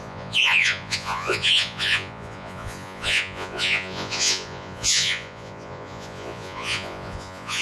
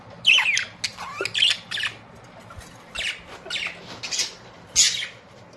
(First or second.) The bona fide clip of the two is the second